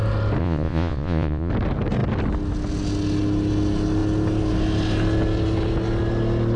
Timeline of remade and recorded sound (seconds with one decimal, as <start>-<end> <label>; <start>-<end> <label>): 0.0-0.4 recorded; 0.4-1.5 remade; 1.5-6.6 recorded